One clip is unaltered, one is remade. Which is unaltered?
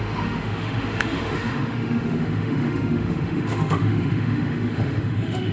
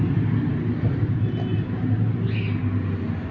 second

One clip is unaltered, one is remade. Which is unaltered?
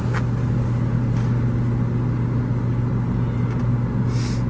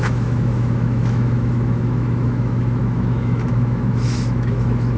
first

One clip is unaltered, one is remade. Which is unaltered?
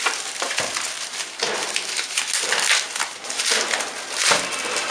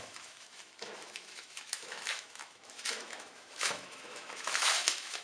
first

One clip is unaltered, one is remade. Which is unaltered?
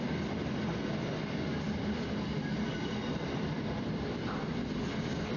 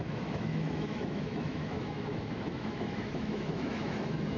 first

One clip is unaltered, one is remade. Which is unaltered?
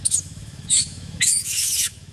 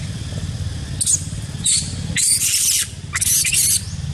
second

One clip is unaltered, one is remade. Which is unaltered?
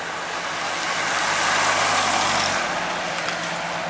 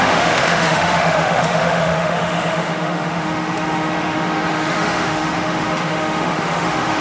first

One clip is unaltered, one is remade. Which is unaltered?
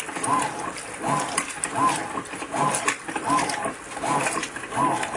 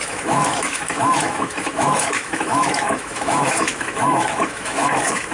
first